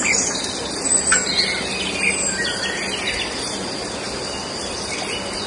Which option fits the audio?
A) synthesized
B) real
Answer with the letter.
B